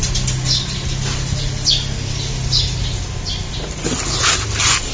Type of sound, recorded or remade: recorded